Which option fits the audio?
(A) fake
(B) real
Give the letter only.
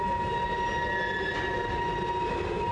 B